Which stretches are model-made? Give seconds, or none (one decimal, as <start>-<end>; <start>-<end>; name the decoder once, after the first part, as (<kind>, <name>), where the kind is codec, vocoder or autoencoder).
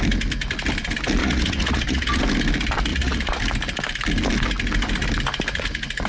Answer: 1.2-2.2 (vocoder, Vocos); 2.9-3.4